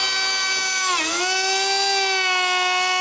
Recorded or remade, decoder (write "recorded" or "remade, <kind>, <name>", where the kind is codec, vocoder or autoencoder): recorded